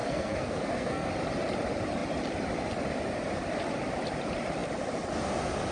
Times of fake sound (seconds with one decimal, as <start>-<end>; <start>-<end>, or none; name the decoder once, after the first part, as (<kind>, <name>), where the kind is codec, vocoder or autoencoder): 0.0-1.1 (codec, SNAC)